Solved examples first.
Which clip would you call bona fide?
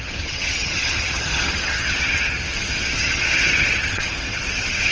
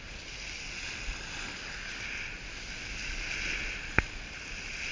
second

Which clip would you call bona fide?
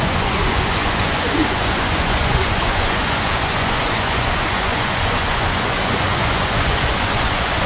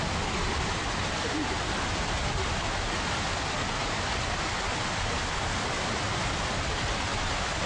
second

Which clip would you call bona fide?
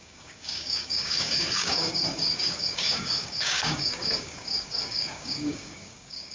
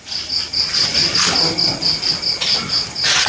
second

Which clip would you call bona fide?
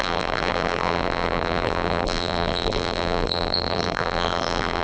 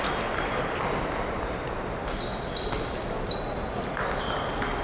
second